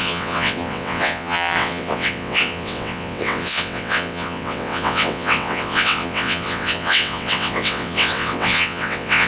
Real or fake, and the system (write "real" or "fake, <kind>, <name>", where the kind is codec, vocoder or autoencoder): fake, vocoder, WaveNeXt